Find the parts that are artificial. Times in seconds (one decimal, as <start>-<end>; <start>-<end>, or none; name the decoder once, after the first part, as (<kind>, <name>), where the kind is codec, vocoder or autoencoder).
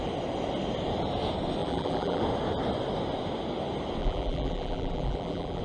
1.6-2.2 (vocoder, BigVGAN v2); 4.0-5.6